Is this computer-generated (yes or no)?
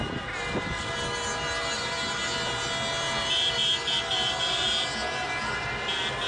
no